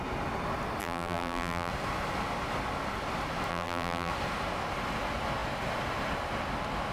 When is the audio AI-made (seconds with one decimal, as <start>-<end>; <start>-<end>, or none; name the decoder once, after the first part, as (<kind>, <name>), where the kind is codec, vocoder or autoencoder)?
0.8-1.7 (vocoder, BigVGAN v2); 3.5-4.1